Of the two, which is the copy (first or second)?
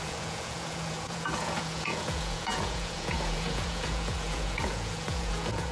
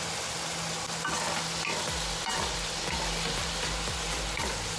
first